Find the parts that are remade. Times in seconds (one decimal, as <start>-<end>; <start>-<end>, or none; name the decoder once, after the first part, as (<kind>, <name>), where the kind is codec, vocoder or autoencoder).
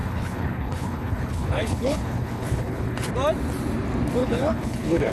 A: 0.0-3.1 (codec, HILCodec); 4.2-5.1